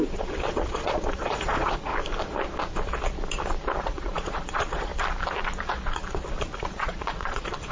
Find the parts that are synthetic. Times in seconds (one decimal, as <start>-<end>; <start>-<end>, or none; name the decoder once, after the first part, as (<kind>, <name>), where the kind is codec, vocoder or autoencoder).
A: 0.0-1.9 (vocoder, Vocos); 3.8-4.9; 6.6-7.7